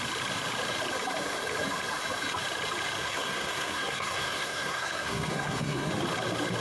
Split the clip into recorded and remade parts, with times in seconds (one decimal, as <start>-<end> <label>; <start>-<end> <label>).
0.0-3.0 recorded; 3.0-5.9 remade; 5.9-6.6 recorded